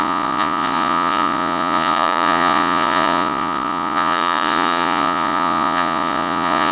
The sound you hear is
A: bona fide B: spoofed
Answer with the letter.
B